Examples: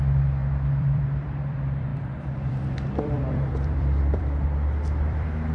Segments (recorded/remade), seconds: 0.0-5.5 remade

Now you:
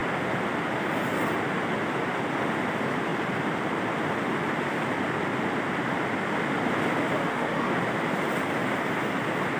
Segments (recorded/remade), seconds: 0.0-7.2 recorded; 7.2-7.7 remade; 7.7-9.6 recorded

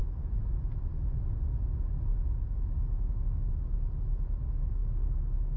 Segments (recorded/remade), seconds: 0.0-5.6 recorded

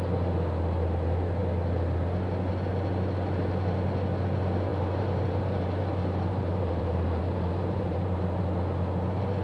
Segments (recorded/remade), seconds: 0.0-4.7 recorded; 4.7-8.4 remade; 8.4-9.4 recorded

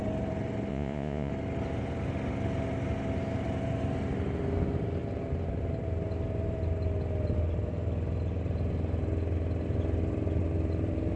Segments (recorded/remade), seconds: 0.0-0.7 recorded; 0.7-1.3 remade; 1.3-11.2 recorded

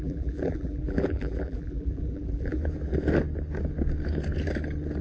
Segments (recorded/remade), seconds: 0.0-2.6 remade; 2.6-5.0 recorded